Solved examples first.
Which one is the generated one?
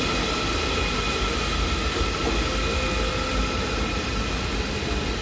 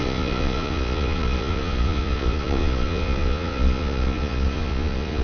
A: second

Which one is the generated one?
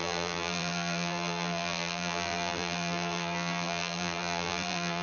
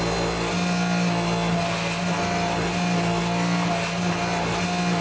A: first